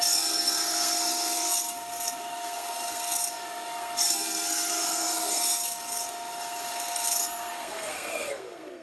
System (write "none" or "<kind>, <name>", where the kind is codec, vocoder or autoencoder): codec, SNAC